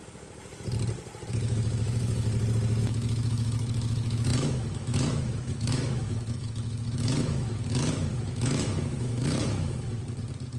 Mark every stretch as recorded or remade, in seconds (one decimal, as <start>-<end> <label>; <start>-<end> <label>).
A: 0.0-1.3 recorded; 1.3-2.3 remade; 2.3-2.8 recorded; 2.8-10.0 remade; 10.0-10.6 recorded